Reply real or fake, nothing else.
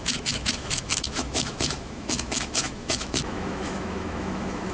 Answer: fake